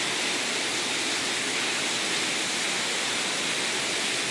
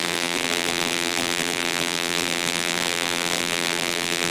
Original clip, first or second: first